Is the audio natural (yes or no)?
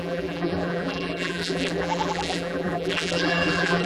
no